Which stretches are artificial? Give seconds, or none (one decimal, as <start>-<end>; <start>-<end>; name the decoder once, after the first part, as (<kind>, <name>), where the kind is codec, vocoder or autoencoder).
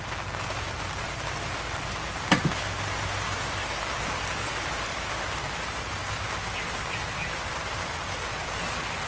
none